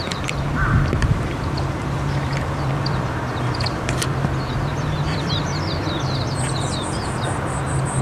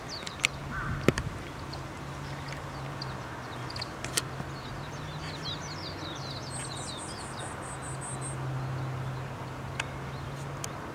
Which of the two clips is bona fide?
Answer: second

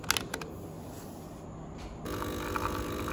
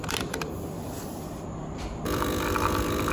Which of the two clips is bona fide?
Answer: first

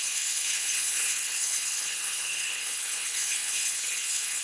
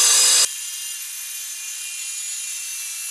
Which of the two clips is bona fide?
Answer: second